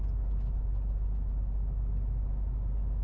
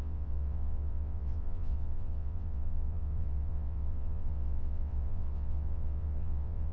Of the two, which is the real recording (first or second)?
first